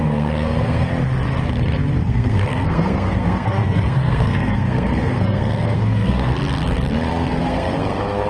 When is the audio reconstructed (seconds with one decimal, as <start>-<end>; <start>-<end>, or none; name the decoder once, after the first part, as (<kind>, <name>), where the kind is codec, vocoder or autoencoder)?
0.0-0.9 (codec, SNAC); 2.0-6.3; 7.1-8.3

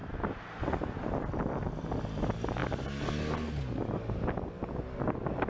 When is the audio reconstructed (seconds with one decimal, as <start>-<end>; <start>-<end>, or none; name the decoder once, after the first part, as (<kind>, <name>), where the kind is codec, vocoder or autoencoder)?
none

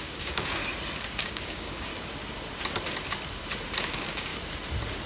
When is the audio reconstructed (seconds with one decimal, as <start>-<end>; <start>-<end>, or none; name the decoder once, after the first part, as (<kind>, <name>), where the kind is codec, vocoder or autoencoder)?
0.0-0.6 (codec, DAC); 1.2-1.9; 3.8-4.3

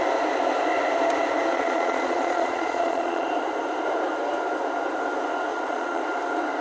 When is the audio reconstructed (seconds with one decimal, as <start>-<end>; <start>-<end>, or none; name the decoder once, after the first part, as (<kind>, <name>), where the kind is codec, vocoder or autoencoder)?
1.5-3.3 (vocoder, Vocos); 5.5-6.0